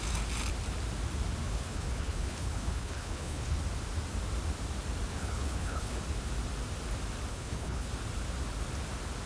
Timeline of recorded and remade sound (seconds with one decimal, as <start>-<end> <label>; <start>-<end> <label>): 0.0-1.4 recorded; 1.4-3.6 remade; 3.6-5.1 recorded; 5.1-6.0 remade; 6.0-7.3 recorded; 7.3-7.9 remade; 7.9-9.3 recorded